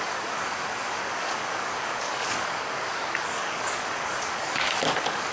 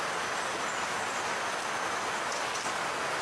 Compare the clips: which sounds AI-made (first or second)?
first